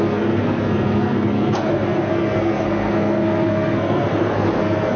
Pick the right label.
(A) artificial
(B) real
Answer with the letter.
A